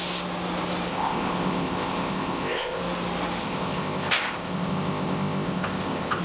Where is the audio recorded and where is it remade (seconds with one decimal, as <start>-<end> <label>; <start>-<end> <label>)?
0.0-0.9 recorded; 0.9-2.8 remade; 2.8-3.4 recorded; 3.4-6.2 remade